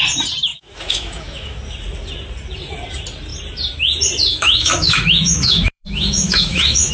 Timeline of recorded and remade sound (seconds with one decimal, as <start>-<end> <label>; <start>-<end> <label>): 0.0-0.5 recorded; 0.5-1.6 remade; 1.6-4.3 recorded; 4.3-6.9 remade